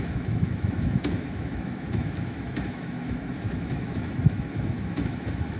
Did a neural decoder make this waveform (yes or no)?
yes